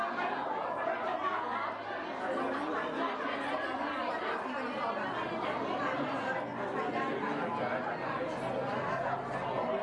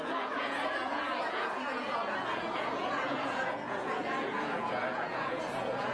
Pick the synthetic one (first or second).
second